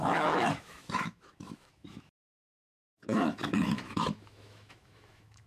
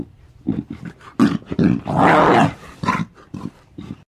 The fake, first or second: first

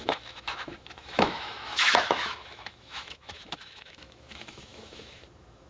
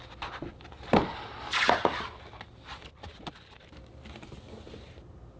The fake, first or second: first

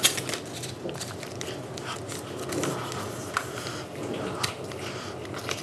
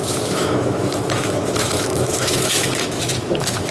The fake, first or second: second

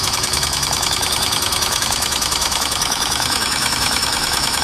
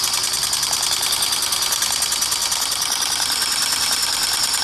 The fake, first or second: first